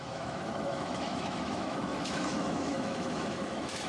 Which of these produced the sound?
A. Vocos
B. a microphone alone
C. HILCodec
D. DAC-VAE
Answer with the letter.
D